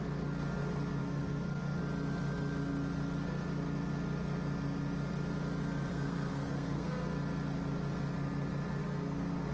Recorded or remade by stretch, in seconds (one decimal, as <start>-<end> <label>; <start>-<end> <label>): 0.0-1.0 recorded; 1.0-1.8 remade; 1.8-5.9 recorded; 5.9-6.9 remade; 6.9-8.8 recorded; 8.8-9.5 remade